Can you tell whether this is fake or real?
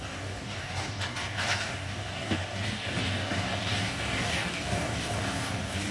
fake